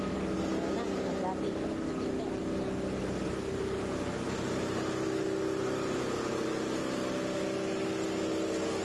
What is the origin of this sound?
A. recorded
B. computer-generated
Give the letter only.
A